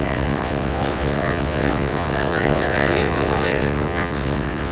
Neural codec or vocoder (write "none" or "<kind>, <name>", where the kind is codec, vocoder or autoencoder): vocoder, WaveNeXt